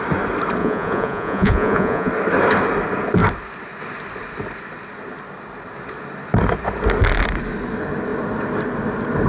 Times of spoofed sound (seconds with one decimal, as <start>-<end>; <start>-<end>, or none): 0.6-2.1